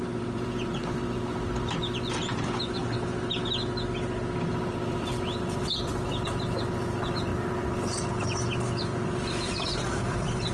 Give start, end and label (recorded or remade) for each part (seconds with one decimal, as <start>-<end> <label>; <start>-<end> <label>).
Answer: 0.0-0.8 remade; 0.8-4.4 recorded; 4.4-7.3 remade; 7.3-8.2 recorded; 8.2-10.5 remade